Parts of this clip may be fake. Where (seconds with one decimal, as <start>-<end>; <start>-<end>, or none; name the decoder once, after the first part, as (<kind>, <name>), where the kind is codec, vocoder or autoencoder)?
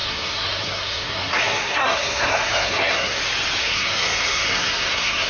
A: 0.0-3.2 (codec, SNAC); 3.6-5.3